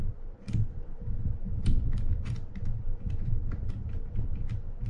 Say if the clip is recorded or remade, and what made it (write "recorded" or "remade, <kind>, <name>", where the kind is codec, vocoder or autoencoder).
recorded